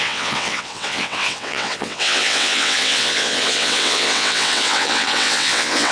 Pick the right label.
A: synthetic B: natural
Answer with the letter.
A